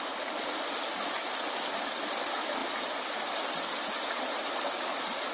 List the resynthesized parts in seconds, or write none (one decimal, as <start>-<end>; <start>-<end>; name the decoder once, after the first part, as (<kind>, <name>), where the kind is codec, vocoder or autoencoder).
none